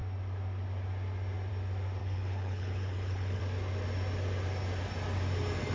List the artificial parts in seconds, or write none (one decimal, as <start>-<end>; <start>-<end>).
2.0-3.4